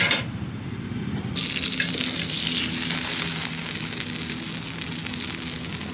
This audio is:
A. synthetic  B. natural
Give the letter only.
B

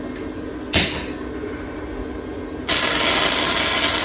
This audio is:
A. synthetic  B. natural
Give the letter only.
B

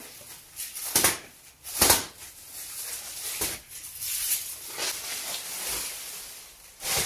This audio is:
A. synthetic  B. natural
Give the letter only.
B